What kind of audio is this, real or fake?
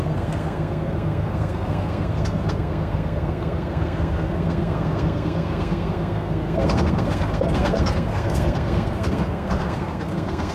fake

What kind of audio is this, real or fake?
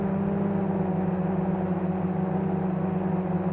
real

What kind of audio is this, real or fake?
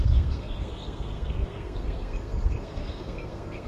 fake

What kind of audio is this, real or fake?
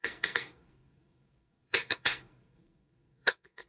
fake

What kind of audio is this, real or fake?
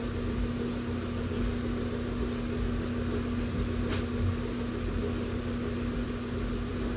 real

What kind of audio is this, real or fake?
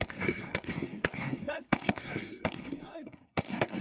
fake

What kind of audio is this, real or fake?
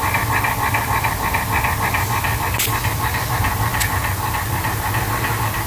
real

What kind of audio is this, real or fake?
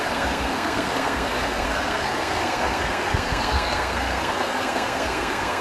fake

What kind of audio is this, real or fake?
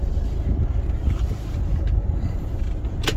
real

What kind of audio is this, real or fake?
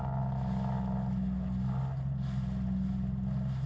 real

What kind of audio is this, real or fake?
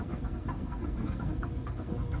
fake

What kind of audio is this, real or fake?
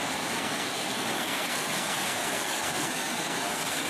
fake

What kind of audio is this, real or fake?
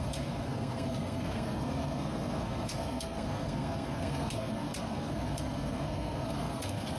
fake